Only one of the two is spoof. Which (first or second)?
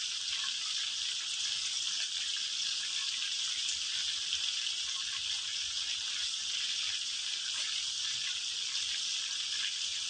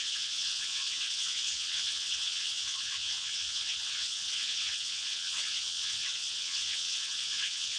second